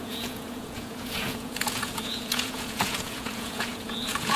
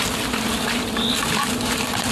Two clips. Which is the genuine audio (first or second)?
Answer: second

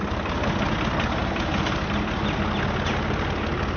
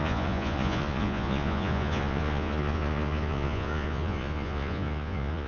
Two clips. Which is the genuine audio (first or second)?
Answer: first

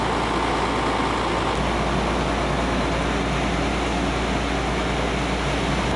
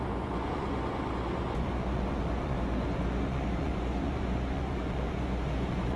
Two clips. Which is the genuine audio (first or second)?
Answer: first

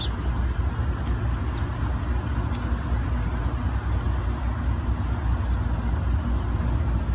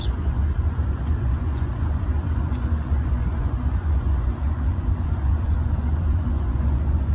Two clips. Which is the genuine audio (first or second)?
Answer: first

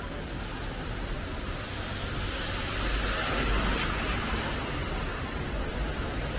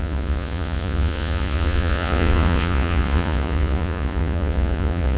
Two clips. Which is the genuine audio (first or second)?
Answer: first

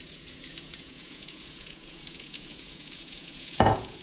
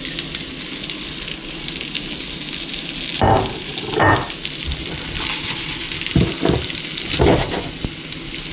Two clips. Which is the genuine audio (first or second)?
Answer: second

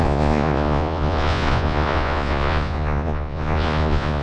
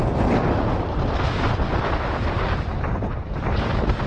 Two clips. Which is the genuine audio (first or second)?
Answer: second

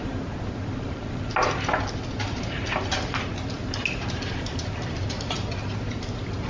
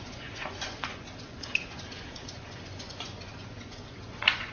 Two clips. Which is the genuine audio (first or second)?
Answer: first